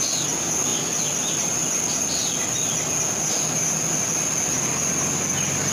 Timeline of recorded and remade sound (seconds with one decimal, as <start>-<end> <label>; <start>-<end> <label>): 0.0-5.7 recorded